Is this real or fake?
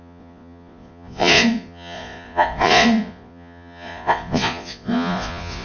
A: fake